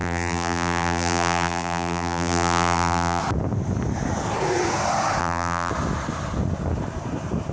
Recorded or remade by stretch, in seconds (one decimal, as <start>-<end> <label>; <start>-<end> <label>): 0.0-3.2 remade; 3.2-5.2 recorded; 5.2-5.7 remade; 5.7-7.5 recorded